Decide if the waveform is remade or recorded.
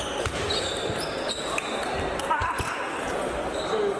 recorded